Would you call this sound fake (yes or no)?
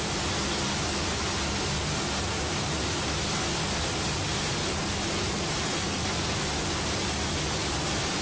no